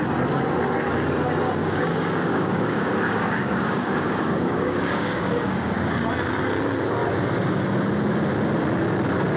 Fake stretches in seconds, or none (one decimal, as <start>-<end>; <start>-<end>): 1.6-6.1